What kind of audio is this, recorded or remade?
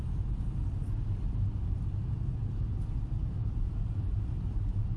recorded